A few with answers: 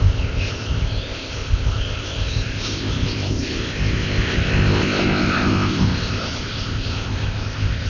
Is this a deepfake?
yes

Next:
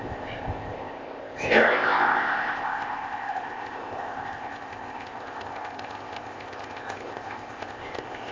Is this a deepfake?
yes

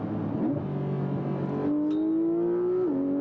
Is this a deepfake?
no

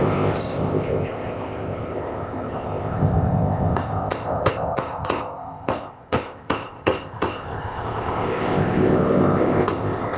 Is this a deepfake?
yes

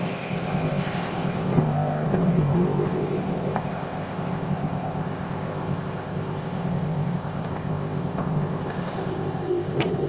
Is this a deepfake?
yes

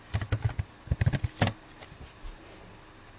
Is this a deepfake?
no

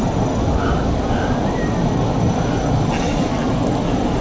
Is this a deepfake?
no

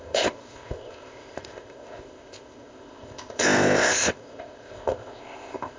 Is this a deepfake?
yes